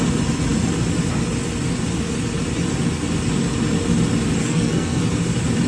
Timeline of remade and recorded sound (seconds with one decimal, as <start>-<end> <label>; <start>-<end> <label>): 0.0-4.4 recorded; 4.4-5.0 remade; 5.0-5.7 recorded